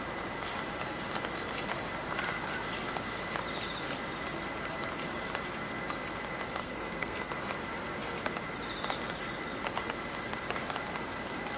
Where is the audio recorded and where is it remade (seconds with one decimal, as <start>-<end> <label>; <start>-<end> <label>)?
0.0-6.6 recorded; 6.6-7.3 remade; 7.3-11.6 recorded